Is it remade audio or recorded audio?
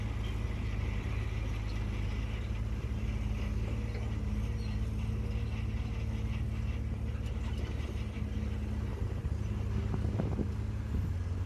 recorded